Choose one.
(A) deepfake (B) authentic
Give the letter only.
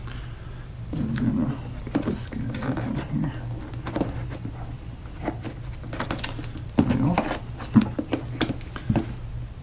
B